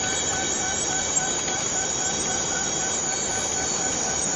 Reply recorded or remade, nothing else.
recorded